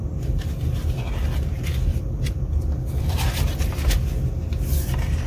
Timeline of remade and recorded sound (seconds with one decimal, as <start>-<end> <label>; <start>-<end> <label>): 0.0-1.9 recorded; 1.9-3.9 remade; 3.9-5.3 recorded